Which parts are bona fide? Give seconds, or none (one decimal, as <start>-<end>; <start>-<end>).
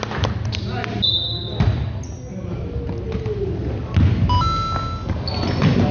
0.0-5.9